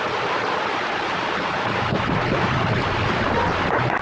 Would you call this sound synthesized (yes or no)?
no